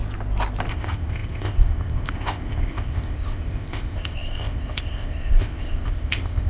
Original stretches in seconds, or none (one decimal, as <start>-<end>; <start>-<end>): 0.0-0.7